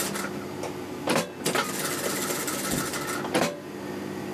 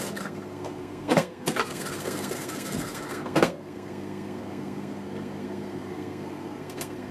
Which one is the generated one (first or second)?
second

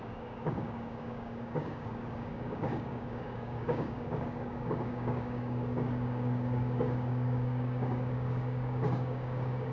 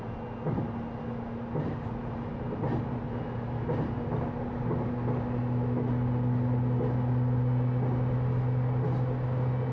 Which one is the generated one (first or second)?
first